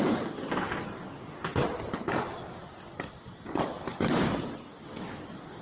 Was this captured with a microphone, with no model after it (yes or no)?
yes